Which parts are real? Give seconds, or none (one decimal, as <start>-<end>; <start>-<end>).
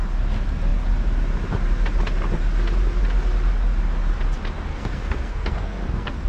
0.0-4.7